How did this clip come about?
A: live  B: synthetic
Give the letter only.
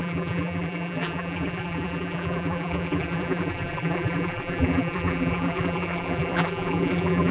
B